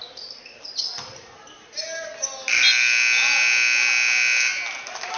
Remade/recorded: recorded